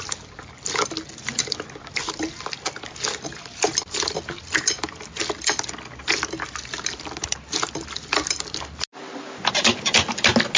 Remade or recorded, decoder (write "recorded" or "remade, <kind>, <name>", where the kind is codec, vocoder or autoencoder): recorded